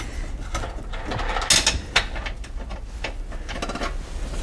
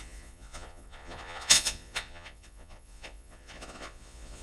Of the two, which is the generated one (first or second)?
second